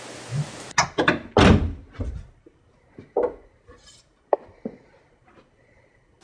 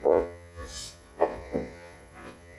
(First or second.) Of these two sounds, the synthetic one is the second